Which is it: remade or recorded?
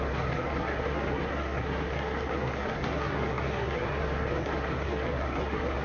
remade